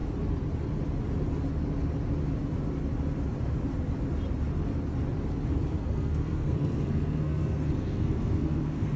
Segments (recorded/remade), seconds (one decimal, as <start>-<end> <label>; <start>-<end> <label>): 0.0-5.8 recorded; 5.8-9.0 remade